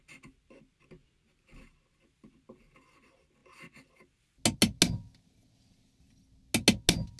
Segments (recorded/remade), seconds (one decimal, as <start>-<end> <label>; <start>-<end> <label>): 0.0-7.2 recorded